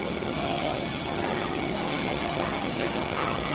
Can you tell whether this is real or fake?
fake